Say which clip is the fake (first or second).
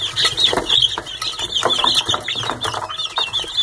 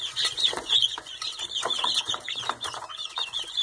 second